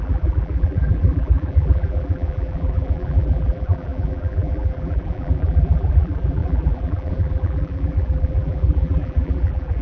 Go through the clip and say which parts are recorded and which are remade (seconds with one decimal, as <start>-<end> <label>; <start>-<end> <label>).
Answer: 0.0-9.8 remade

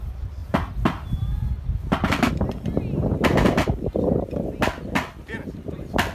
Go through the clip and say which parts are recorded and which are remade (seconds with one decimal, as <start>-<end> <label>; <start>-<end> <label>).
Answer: 0.0-6.1 recorded

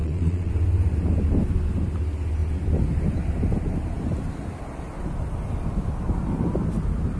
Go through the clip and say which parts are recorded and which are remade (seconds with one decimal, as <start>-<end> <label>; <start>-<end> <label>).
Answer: 0.0-0.5 remade; 0.5-7.2 recorded

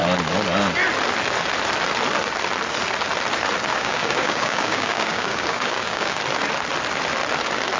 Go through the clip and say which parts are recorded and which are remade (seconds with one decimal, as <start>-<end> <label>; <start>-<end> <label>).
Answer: 0.0-3.7 recorded; 3.7-6.2 remade; 6.2-7.8 recorded

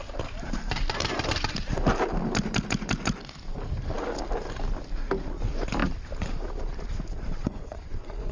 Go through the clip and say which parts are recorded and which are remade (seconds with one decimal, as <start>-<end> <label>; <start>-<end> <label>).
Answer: 0.0-7.4 recorded; 7.4-8.3 remade

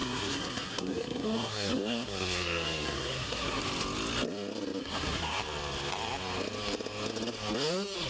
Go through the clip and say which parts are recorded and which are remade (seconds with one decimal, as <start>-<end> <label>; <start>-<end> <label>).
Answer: 0.0-3.6 remade; 3.6-4.8 recorded; 4.8-5.4 remade; 5.4-8.1 recorded

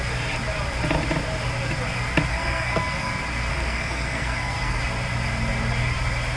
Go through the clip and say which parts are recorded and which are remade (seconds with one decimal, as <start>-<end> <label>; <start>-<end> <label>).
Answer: 0.0-2.3 recorded; 2.3-3.1 remade; 3.1-3.5 recorded; 3.5-4.8 remade; 4.8-6.4 recorded